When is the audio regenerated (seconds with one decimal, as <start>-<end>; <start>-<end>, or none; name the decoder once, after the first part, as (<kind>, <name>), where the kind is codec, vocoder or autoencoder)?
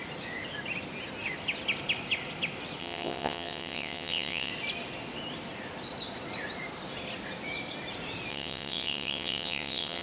2.8-4.5 (vocoder, WaveNeXt); 8.3-10.0